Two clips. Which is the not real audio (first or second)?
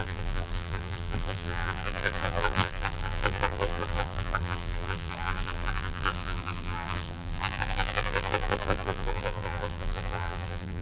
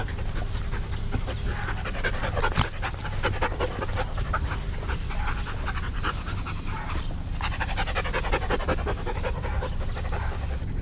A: first